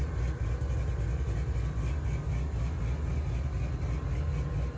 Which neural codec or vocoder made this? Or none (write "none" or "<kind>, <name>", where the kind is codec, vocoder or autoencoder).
none